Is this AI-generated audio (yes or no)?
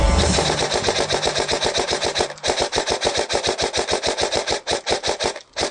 yes